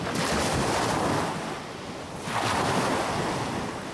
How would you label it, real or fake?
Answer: real